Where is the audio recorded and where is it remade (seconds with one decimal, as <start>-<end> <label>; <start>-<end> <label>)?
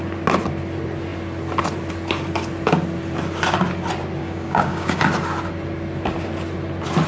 0.0-4.2 recorded; 4.2-5.0 remade; 5.0-7.1 recorded